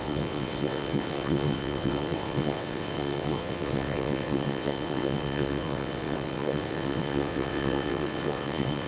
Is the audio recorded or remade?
remade